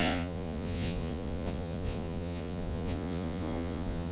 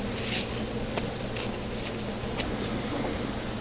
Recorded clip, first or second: second